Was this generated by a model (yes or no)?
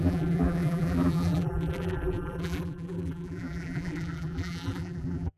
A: yes